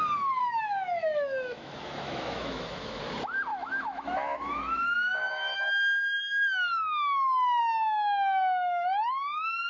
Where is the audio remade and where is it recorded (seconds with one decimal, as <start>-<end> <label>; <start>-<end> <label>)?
0.0-0.4 recorded; 0.4-3.0 remade; 3.0-3.5 recorded; 3.5-7.6 remade; 7.6-9.7 recorded

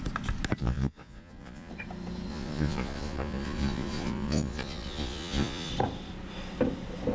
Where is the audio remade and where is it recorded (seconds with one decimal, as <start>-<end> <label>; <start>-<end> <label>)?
0.0-0.6 recorded; 0.6-1.7 remade; 1.7-2.3 recorded; 2.3-5.7 remade; 5.7-7.1 recorded

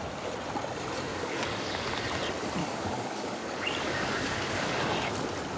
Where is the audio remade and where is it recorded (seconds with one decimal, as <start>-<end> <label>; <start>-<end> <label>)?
0.0-1.1 recorded; 1.1-2.0 remade; 2.0-2.6 recorded; 2.6-5.1 remade; 5.1-5.6 recorded

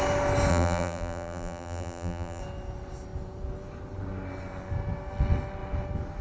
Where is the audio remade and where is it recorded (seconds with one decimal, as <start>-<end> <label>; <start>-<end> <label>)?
0.0-0.5 recorded; 0.5-2.4 remade; 2.4-6.2 recorded

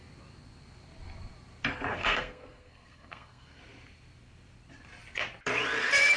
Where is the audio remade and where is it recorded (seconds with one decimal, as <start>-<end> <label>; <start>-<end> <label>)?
0.0-1.9 recorded; 1.9-3.6 remade; 3.6-6.2 recorded

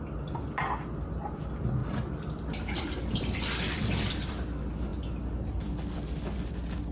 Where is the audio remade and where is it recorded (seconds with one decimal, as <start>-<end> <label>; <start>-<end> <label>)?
0.0-1.8 recorded; 1.8-4.3 remade; 4.3-6.9 recorded

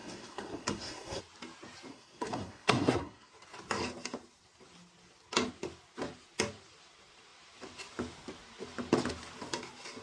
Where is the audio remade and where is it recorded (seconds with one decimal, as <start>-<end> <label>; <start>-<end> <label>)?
0.0-1.2 remade; 1.2-1.9 recorded; 1.9-3.3 remade; 3.3-10.0 recorded

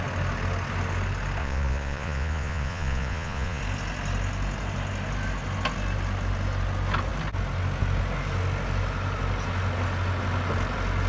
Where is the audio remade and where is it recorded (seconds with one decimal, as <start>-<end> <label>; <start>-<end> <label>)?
0.0-1.4 recorded; 1.4-3.6 remade; 3.6-11.1 recorded